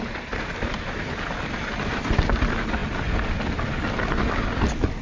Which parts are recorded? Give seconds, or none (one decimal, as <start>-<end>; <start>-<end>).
0.0-5.0